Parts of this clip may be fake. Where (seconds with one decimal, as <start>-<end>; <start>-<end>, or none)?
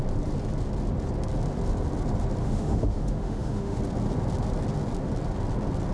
2.4-3.8